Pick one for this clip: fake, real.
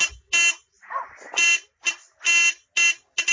real